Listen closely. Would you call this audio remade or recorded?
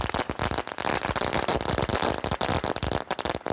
recorded